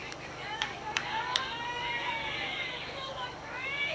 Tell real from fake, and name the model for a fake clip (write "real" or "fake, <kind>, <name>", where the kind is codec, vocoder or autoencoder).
fake, codec, DAC